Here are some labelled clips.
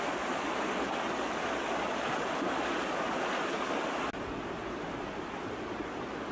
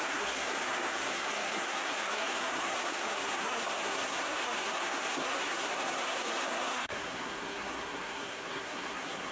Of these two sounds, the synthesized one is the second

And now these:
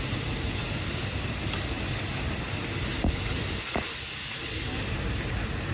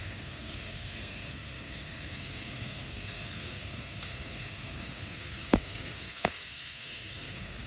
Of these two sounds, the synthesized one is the second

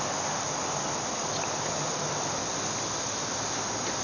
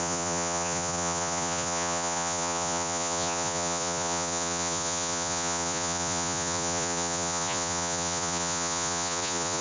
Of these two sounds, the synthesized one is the second